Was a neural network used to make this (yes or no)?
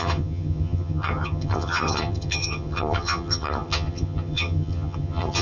yes